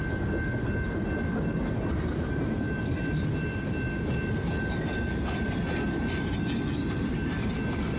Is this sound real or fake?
real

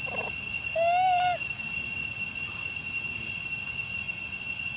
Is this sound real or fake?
real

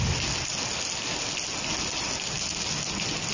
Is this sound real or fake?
real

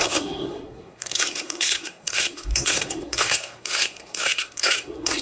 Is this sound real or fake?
fake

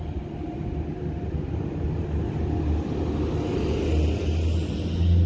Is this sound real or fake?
real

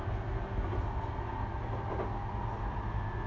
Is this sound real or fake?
real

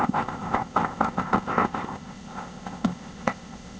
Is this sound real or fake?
fake